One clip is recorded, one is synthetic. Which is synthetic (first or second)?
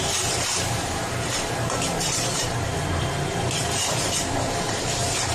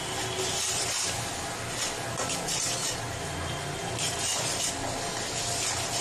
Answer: first